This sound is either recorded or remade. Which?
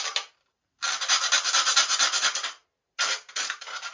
recorded